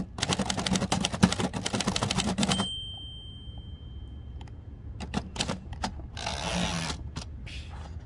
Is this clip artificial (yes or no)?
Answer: no